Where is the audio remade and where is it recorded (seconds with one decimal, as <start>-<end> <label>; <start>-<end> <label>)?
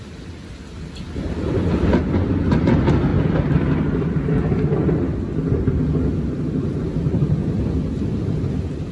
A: 0.0-3.1 recorded; 3.1-4.9 remade; 4.9-8.9 recorded